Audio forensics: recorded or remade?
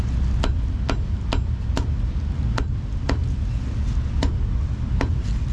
recorded